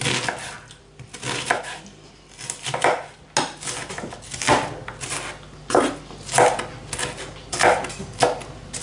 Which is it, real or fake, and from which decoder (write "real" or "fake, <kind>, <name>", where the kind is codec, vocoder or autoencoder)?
real